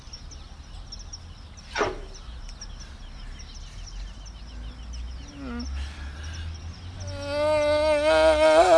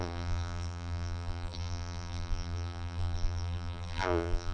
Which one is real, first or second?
first